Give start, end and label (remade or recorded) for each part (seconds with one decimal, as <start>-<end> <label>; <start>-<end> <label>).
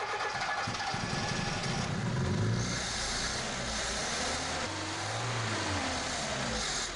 0.0-7.0 recorded